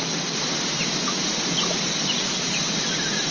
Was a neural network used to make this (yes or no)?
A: no